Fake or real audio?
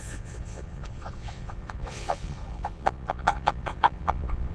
fake